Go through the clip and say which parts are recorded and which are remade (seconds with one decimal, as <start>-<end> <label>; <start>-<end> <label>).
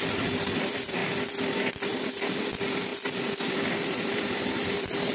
0.0-1.0 remade; 1.0-2.4 recorded; 2.4-5.1 remade